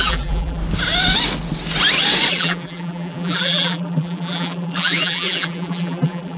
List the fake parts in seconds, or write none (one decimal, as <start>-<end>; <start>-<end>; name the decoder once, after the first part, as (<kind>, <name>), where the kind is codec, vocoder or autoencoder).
0.0-0.6 (vocoder, BigVGAN v2); 2.3-6.4